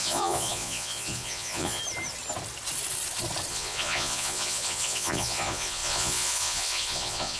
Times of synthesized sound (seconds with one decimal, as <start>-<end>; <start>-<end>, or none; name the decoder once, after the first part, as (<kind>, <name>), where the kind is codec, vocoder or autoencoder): 0.0-1.8 (vocoder, Vocos); 3.5-7.4